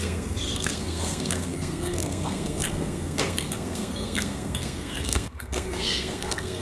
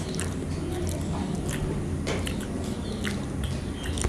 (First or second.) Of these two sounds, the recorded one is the second